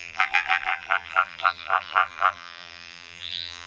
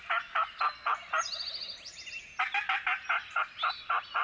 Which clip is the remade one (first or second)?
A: first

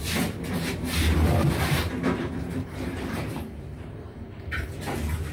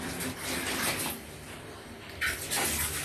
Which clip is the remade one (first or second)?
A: first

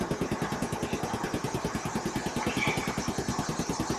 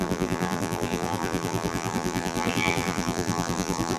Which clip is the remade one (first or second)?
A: second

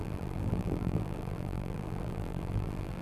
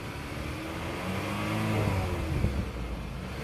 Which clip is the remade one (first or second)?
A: first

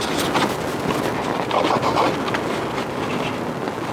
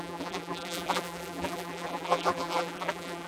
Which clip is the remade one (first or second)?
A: second